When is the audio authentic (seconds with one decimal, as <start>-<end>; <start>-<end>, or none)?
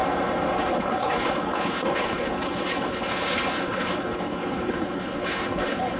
0.0-0.7